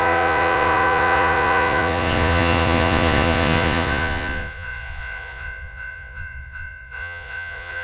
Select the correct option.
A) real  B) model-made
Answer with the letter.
B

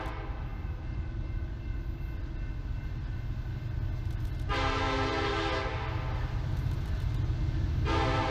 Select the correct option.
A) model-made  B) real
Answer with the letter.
B